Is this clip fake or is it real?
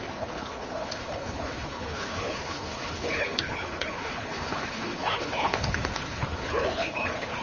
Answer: fake